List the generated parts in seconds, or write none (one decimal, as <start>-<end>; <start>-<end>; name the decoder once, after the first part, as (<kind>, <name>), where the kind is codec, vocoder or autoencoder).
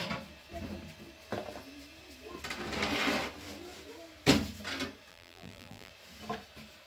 5.1-5.9 (vocoder, BigVGAN v2)